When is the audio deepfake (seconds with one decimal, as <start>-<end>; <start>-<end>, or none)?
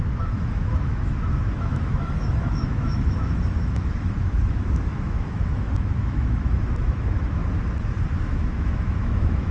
0.0-7.4; 8.2-9.5